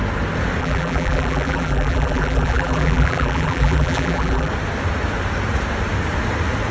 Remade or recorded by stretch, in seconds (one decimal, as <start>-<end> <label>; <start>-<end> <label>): 0.0-0.6 recorded; 0.6-4.5 remade; 4.5-6.7 recorded